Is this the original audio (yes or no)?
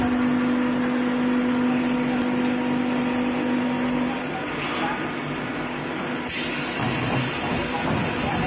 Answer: yes